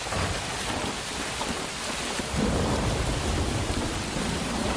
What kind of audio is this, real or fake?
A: fake